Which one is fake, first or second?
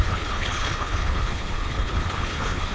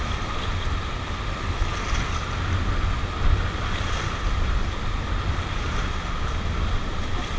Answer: first